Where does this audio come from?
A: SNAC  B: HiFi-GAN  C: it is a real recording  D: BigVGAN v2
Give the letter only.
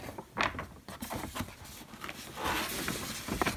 C